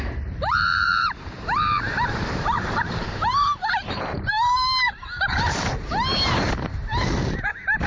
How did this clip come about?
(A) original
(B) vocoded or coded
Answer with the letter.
B